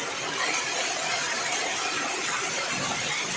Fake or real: real